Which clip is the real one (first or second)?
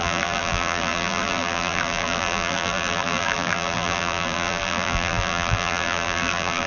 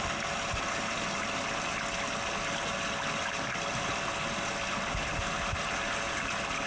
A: second